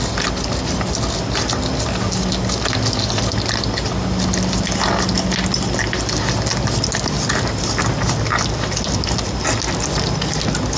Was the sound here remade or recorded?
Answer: recorded